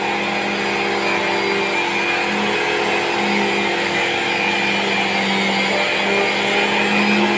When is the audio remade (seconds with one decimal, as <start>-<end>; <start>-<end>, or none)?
3.7-4.5